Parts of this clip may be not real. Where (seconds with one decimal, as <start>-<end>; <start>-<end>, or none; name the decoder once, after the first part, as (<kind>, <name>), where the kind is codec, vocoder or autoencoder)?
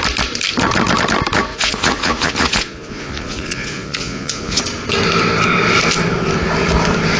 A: 1.5-4.6 (vocoder, Vocos)